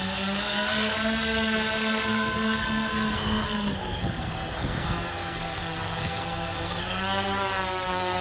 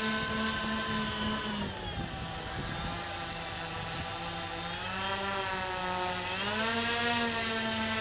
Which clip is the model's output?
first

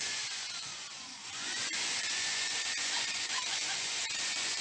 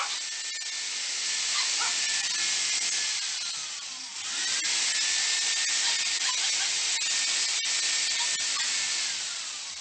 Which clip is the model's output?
first